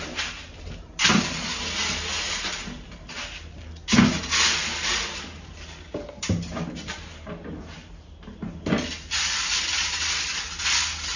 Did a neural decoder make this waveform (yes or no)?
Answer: no